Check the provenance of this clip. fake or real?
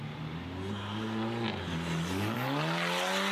real